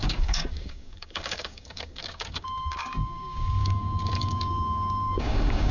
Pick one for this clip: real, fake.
fake